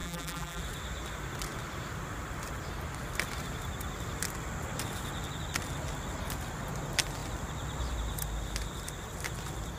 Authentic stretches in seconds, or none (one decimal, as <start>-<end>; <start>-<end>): 0.6-9.8